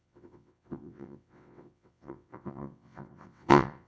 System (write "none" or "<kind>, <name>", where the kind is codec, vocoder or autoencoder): vocoder, WaveNeXt